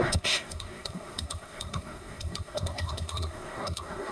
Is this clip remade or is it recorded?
remade